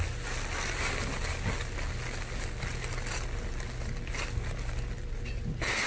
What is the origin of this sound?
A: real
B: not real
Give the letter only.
A